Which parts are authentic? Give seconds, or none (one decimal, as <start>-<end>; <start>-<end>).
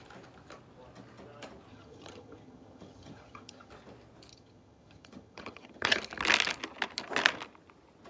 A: 0.0-1.7; 3.7-4.3; 6.0-8.1